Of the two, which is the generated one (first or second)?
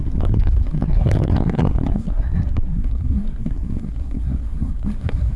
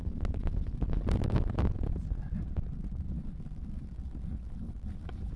first